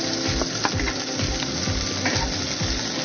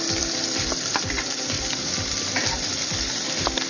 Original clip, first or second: first